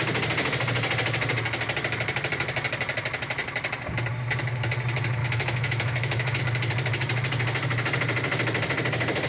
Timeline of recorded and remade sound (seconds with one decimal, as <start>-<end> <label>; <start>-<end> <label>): 0.0-5.2 recorded; 5.2-6.4 remade; 6.4-9.3 recorded